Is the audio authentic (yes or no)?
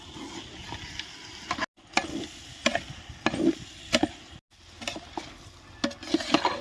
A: yes